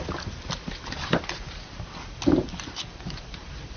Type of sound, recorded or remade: recorded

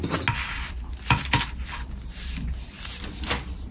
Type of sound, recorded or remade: recorded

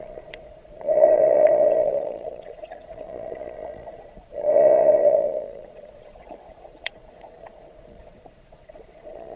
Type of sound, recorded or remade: remade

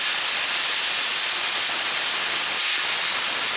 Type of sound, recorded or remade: recorded